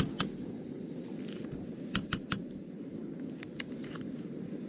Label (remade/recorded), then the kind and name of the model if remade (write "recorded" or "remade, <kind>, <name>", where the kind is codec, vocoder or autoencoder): recorded